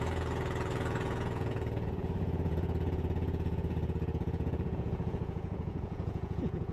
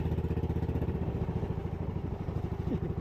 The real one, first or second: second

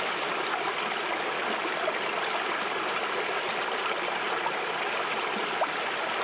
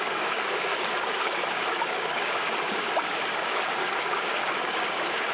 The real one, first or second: first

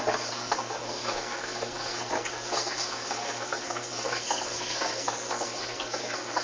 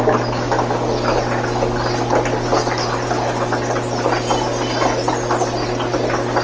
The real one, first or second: second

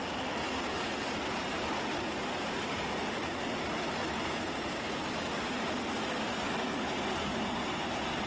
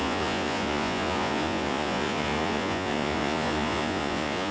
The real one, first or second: first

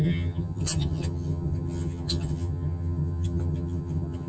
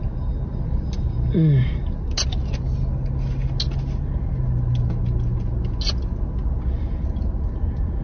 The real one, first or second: second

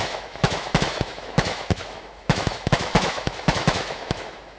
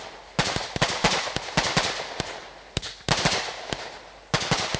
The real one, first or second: second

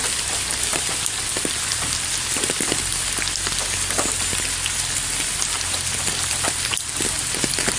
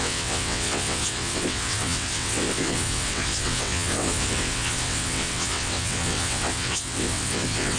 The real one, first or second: first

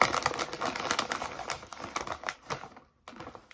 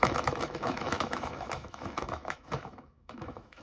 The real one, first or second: first